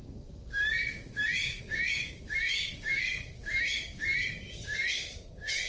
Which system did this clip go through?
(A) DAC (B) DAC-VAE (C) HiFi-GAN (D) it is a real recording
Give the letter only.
A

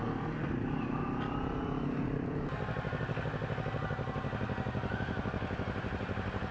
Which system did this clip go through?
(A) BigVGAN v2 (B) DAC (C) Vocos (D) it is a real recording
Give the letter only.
D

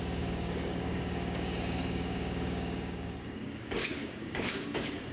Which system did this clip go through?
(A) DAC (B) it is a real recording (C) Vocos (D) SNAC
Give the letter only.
A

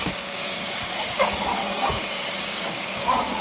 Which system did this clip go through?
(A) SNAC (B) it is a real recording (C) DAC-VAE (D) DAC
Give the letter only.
D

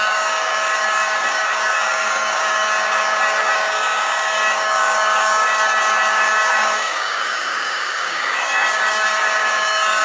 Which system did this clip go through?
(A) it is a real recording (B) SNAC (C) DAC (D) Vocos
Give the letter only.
C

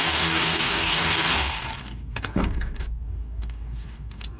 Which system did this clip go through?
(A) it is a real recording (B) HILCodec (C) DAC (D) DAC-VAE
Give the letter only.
C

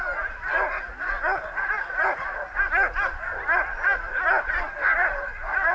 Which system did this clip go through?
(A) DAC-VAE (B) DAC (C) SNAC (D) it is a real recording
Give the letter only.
D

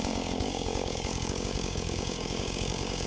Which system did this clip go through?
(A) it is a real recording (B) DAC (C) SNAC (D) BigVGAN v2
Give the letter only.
B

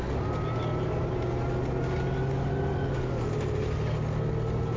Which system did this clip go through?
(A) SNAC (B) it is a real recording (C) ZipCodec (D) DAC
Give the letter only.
B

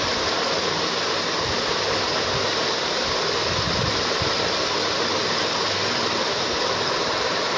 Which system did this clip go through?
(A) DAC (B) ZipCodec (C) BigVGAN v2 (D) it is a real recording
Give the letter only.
D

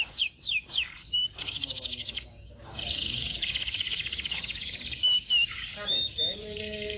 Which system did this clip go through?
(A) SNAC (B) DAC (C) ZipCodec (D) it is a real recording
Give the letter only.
B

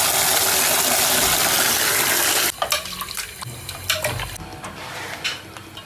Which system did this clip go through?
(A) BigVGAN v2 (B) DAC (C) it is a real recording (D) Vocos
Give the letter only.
C